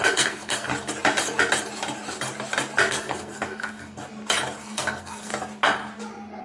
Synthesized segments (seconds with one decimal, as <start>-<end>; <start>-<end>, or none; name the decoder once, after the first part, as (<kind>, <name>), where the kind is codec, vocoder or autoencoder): 0.0-0.7 (codec, SNAC); 2.9-4.0; 4.6-5.3